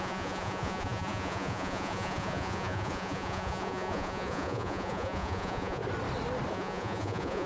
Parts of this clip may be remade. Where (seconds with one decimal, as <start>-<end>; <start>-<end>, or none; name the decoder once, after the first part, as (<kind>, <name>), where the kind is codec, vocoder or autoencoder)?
0.0-5.8 (vocoder, Vocos); 6.5-7.5